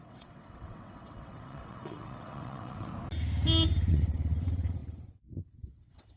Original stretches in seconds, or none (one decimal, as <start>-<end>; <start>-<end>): 2.9-3.9